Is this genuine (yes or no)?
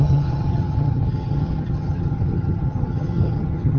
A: no